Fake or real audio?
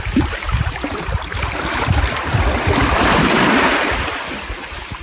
real